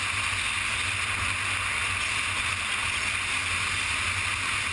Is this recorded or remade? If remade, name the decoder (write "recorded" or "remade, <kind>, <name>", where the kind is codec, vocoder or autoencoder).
recorded